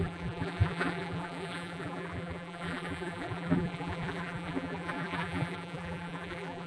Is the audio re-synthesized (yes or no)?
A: yes